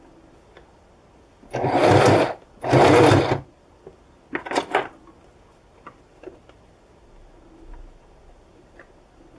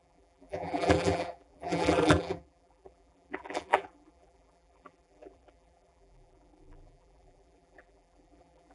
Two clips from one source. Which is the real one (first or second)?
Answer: first